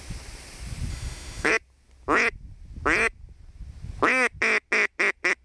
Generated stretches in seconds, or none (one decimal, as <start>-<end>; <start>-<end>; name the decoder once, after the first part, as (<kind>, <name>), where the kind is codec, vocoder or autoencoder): 0.9-1.5 (autoencoder, DAC-VAE)